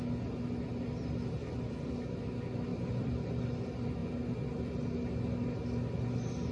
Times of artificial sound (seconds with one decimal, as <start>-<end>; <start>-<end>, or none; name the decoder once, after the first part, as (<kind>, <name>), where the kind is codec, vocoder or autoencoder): 2.7-3.3 (vocoder, BigVGAN v2)